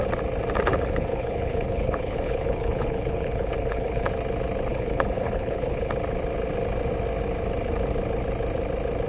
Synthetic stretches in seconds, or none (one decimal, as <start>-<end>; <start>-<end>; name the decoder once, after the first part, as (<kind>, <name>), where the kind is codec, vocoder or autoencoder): 0.7-4.1 (codec, HILCodec); 4.7-5.9